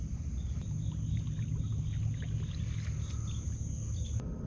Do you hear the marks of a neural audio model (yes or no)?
no